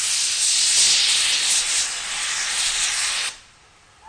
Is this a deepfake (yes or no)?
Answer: no